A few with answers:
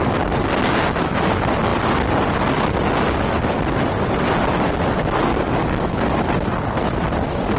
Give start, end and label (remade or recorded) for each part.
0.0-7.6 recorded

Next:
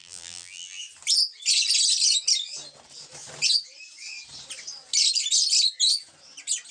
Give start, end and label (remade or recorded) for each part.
0.0-0.8 remade; 0.8-6.7 recorded

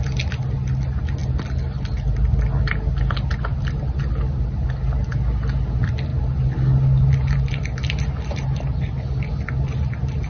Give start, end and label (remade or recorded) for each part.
0.0-10.3 recorded

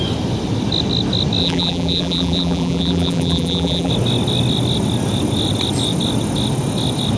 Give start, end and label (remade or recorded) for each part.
0.0-1.4 recorded; 1.4-3.9 remade; 3.9-7.2 recorded

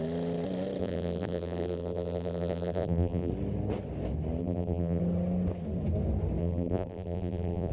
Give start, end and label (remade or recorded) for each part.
0.0-0.8 recorded; 0.8-3.3 remade; 3.3-4.4 recorded; 4.4-5.0 remade; 5.0-6.4 recorded; 6.4-7.7 remade

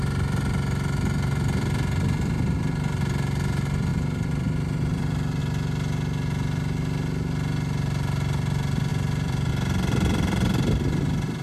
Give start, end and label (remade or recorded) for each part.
0.0-3.9 recorded; 3.9-5.4 remade; 5.4-8.9 recorded; 8.9-9.5 remade; 9.5-11.4 recorded

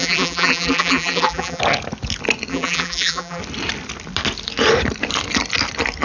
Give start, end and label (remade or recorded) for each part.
0.0-1.6 remade; 1.6-2.5 recorded; 2.5-3.4 remade; 3.4-6.0 recorded